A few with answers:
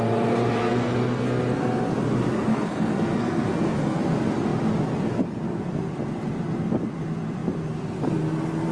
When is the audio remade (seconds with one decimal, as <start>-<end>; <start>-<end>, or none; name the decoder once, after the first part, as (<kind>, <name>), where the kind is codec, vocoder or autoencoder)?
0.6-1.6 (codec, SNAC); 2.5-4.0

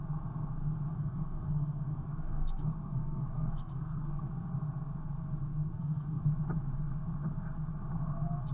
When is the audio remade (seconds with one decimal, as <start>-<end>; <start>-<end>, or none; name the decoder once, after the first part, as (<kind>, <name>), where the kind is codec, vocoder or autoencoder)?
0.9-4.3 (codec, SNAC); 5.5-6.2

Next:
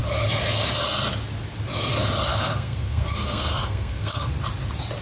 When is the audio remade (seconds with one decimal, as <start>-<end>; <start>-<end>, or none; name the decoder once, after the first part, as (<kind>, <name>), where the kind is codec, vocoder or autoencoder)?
2.3-4.3 (codec, SNAC)